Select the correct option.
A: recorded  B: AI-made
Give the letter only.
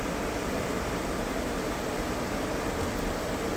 A